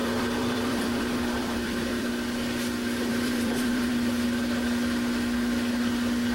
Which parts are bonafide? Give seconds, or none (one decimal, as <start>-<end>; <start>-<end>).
2.1-3.1; 3.9-6.3